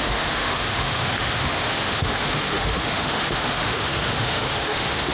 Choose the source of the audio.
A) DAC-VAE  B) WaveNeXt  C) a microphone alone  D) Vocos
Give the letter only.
A